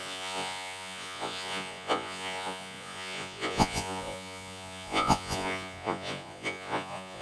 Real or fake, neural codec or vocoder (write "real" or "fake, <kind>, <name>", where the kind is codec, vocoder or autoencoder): fake, vocoder, Vocos